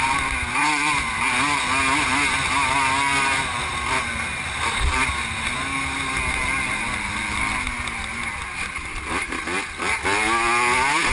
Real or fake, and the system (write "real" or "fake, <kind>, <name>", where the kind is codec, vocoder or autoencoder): real